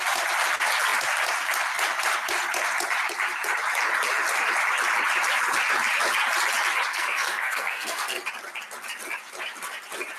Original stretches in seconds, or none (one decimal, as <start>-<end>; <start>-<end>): 0.0-6.9; 8.2-10.2